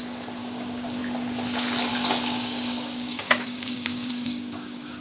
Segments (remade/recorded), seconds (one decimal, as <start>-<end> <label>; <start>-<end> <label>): 0.0-0.4 recorded; 0.4-1.0 remade; 1.0-1.9 recorded; 1.9-5.0 remade